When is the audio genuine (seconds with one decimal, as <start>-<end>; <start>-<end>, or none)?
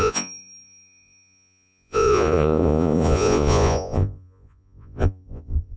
none